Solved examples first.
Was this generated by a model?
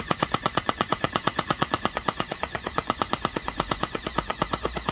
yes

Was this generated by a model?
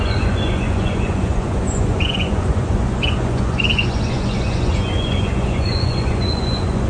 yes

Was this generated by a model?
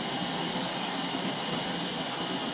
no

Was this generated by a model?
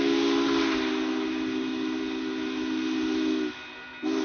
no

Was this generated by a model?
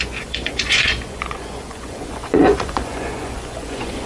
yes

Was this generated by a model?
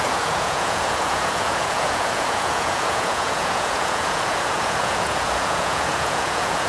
yes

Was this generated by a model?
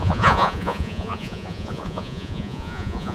yes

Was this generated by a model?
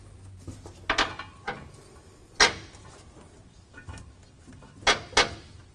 no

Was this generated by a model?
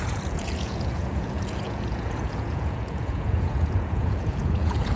yes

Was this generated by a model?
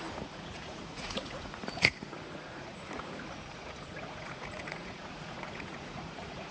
yes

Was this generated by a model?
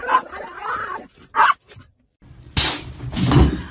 no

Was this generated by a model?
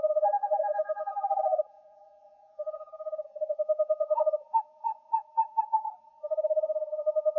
yes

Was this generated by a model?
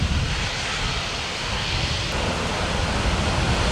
no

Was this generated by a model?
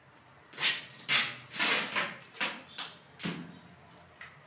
no